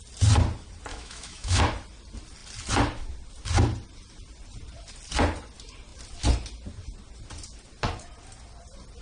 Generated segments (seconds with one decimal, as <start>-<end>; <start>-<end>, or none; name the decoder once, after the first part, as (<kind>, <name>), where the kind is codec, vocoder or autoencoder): 0.9-1.6 (autoencoder, DAC-VAE)

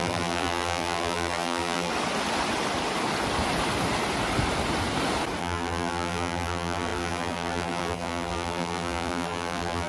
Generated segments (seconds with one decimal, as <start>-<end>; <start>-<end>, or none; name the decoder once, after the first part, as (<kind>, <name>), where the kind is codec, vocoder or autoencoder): 0.0-1.9 (vocoder, BigVGAN v2); 5.4-9.9